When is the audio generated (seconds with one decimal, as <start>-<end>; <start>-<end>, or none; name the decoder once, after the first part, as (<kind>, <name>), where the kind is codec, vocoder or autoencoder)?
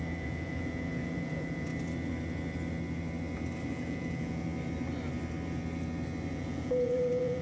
0.0-1.7 (vocoder, Vocos); 3.7-4.5; 6.3-7.4